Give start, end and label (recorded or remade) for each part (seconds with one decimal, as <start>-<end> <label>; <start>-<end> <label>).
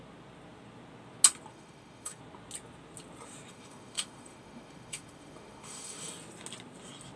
0.0-1.5 recorded; 1.5-2.2 remade; 2.2-3.5 recorded; 3.5-6.1 remade; 6.1-7.2 recorded